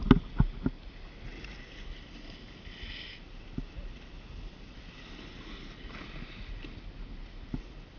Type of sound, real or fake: real